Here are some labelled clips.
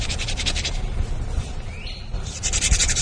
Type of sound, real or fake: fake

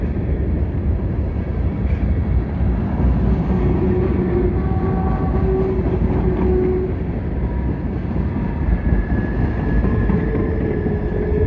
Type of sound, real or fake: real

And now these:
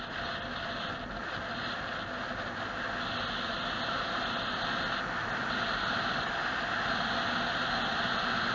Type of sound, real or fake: real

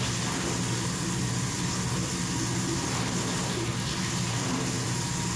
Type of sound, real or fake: real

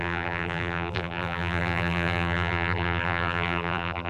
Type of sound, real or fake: fake